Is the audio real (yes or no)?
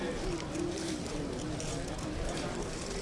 yes